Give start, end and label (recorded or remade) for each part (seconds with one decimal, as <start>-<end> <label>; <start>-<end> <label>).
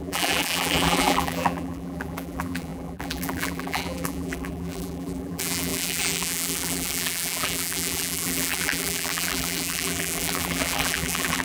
0.0-11.4 remade